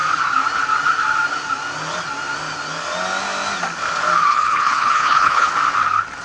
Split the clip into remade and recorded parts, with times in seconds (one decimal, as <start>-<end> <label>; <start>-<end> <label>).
0.0-4.3 recorded; 4.3-5.5 remade; 5.5-6.2 recorded